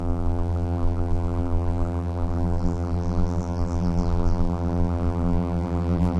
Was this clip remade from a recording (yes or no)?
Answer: yes